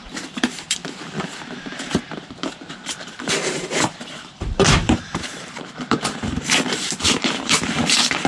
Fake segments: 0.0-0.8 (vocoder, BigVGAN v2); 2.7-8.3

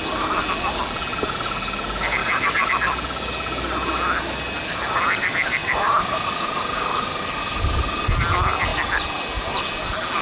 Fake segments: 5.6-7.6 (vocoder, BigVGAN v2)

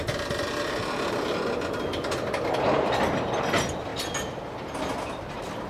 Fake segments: none

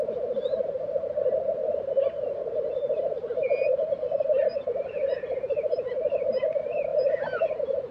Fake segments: 1.6-5.9 (vocoder, BigVGAN v2)

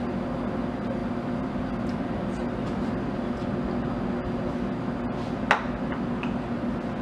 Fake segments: 2.4-2.9 (vocoder, BigVGAN v2)

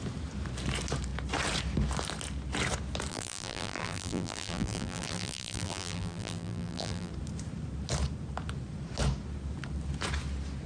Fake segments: 3.1-7.1 (vocoder, BigVGAN v2)

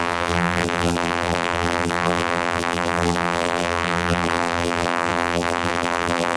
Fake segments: 0.0-6.4 (vocoder, BigVGAN v2)